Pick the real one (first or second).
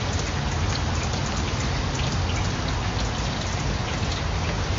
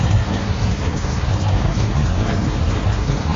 first